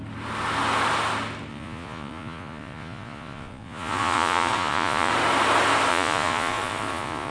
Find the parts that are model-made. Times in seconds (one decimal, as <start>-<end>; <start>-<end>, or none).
1.5-5.1; 5.9-7.3